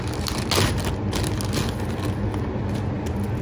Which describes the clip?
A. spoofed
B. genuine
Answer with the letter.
B